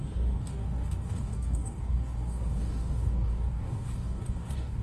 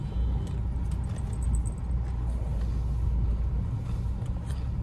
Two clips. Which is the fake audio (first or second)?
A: first